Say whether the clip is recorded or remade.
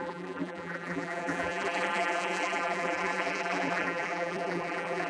remade